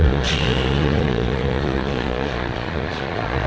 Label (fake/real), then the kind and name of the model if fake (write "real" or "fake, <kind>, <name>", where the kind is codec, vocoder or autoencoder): fake, vocoder, Vocos